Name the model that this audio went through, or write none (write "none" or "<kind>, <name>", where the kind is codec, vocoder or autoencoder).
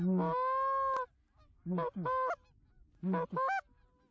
none